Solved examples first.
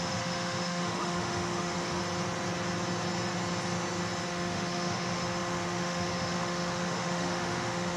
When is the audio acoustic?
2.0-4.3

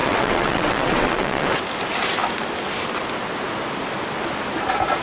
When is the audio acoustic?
1.6-5.0

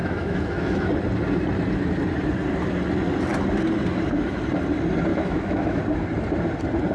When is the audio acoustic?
0.9-5.1; 5.8-6.9

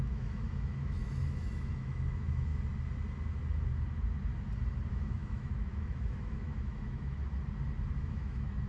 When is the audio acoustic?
2.5-4.9; 7.2-8.0

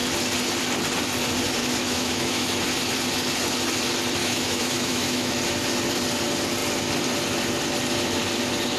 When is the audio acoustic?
0.0-1.6; 2.6-4.2; 5.3-8.8

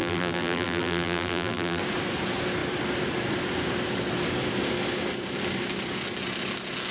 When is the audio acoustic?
1.8-6.9